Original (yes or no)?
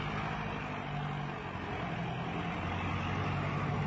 yes